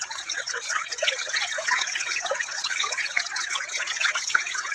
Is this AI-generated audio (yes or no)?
yes